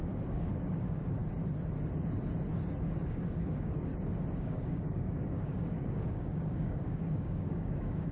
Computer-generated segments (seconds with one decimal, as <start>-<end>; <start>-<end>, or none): 0.0-1.2; 2.8-3.9; 4.4-8.1